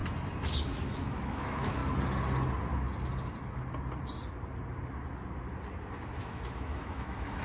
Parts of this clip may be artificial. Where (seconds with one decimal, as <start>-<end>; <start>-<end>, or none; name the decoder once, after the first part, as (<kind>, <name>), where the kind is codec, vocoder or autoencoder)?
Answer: 0.6-1.8 (autoencoder, DAC-VAE); 6.2-7.4